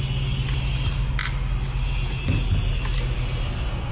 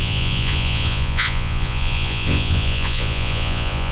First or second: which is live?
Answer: first